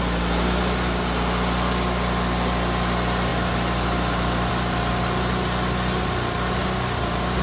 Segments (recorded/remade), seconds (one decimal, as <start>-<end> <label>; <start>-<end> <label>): 0.0-7.4 recorded